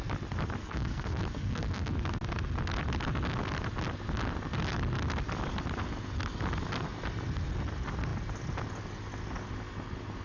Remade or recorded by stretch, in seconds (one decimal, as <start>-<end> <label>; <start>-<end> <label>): 0.0-0.6 recorded; 0.6-1.9 remade; 1.9-10.2 recorded